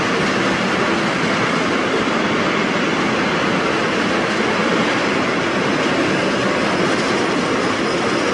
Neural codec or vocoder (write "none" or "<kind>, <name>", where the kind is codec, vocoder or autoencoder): none